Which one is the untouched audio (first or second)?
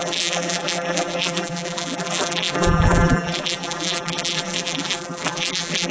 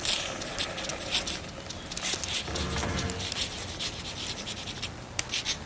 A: second